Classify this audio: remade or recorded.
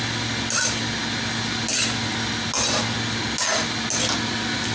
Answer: recorded